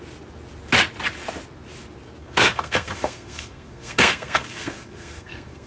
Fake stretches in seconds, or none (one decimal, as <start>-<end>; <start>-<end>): 2.2-5.7